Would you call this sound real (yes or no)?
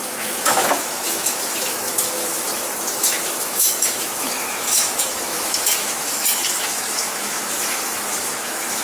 no